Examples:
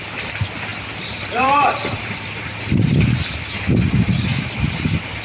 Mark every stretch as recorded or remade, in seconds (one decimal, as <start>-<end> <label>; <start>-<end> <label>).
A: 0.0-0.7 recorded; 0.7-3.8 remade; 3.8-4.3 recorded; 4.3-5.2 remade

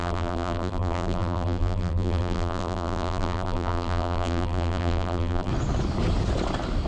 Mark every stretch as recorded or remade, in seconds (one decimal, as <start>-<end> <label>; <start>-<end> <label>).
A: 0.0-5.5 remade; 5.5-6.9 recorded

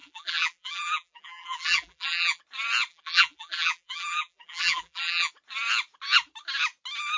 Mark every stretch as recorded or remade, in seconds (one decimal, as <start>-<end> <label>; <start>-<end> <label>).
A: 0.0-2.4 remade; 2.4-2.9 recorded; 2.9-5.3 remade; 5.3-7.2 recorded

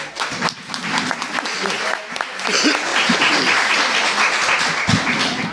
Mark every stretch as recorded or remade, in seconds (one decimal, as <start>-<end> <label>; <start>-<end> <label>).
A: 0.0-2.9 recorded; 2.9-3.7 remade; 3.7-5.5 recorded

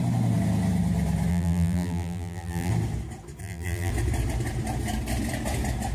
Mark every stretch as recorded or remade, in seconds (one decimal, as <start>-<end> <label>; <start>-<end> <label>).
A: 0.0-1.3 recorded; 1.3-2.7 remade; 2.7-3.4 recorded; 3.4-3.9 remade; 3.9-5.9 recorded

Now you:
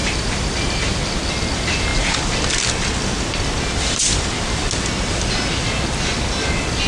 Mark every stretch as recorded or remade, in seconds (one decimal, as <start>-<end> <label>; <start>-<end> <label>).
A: 0.0-1.0 remade; 1.0-6.9 recorded